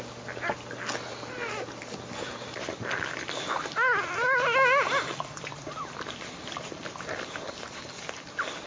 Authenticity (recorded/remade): recorded